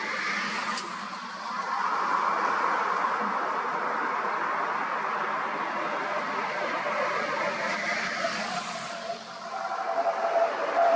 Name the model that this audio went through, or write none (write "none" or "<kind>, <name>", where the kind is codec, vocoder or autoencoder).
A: none